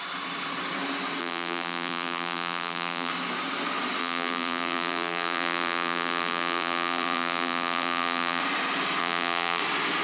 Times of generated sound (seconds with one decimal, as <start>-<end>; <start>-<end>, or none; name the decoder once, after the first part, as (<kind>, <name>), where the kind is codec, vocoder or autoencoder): 1.2-3.1 (vocoder, BigVGAN v2); 4.0-8.4; 9.0-9.6